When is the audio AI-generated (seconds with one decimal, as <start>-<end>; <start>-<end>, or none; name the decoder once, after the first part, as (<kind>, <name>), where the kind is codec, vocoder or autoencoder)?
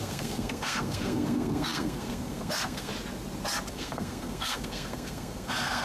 0.0-2.9 (codec, SNAC); 3.7-5.8